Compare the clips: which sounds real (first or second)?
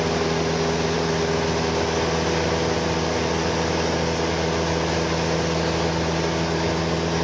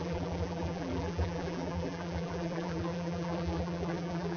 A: first